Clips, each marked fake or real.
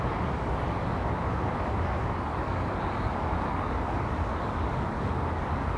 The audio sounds fake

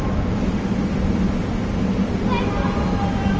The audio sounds real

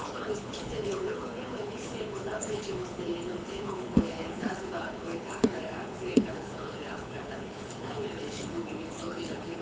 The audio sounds fake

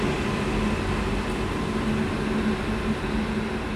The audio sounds real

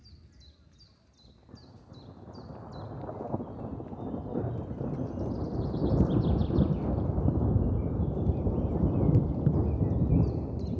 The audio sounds real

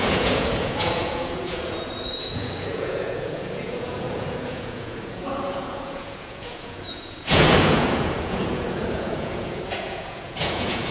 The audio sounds fake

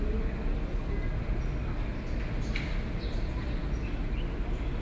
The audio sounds real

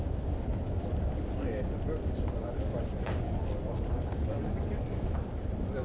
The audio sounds real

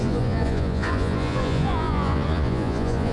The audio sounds fake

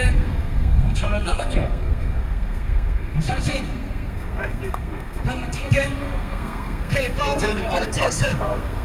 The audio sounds fake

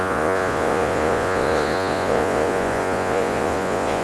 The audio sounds fake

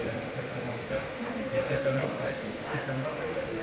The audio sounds fake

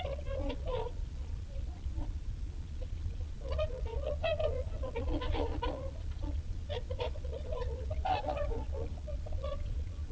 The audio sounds fake